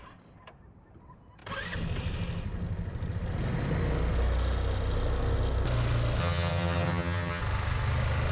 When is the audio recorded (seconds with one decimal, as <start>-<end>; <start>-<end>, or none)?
0.0-6.2; 7.4-8.3